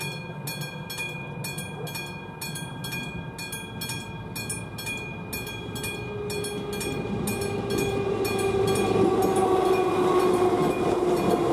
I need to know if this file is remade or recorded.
recorded